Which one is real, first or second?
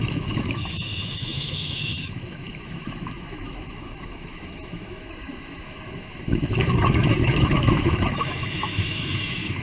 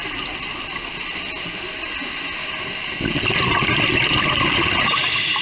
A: second